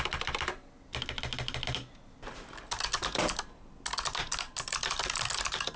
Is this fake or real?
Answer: real